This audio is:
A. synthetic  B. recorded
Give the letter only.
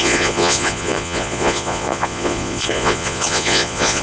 A